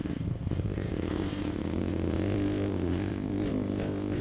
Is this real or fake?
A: fake